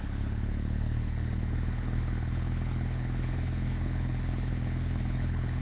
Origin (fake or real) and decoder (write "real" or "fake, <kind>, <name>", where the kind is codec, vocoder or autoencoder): fake, codec, HILCodec